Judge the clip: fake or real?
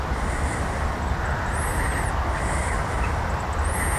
real